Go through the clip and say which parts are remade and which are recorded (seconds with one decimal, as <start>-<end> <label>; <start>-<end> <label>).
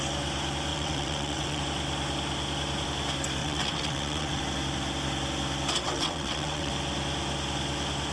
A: 0.0-0.7 recorded; 0.7-1.6 remade; 1.6-3.4 recorded; 3.4-4.4 remade; 4.4-5.8 recorded; 5.8-6.7 remade; 6.7-8.1 recorded